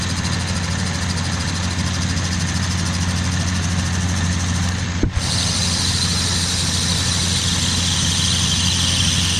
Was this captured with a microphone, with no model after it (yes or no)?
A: yes